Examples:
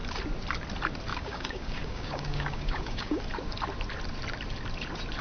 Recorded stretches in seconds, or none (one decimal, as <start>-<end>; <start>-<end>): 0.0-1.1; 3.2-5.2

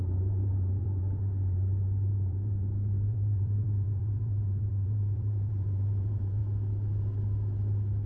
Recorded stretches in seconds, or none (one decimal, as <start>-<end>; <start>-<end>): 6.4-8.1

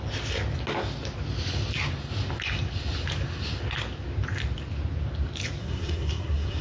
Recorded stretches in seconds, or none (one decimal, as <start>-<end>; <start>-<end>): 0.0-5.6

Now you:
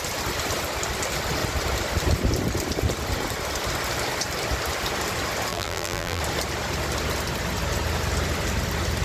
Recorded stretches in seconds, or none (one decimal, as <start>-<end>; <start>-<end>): 0.0-5.5; 6.2-9.0

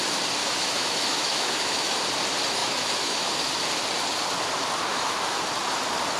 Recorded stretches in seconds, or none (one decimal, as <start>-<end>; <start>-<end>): 0.0-0.4; 2.0-2.6; 3.3-4.9; 5.4-6.2

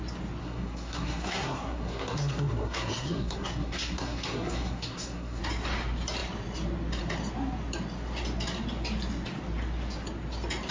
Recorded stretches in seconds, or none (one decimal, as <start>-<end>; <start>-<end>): 0.0-0.4; 5.4-10.7

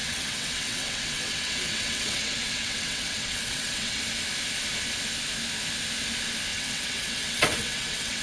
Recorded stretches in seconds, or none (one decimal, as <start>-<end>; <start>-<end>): 4.0-6.5

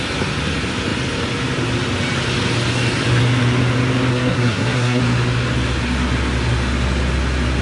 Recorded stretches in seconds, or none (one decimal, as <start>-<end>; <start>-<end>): 0.0-4.1; 5.0-7.6